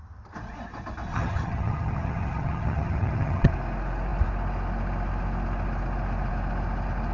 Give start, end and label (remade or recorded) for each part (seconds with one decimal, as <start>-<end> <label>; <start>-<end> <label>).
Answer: 0.0-1.1 recorded; 1.1-3.5 remade; 3.5-7.1 recorded